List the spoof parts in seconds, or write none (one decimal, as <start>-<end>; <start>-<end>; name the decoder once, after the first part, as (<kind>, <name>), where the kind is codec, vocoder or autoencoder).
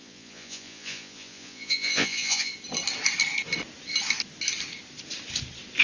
0.0-2.5 (vocoder, Vocos)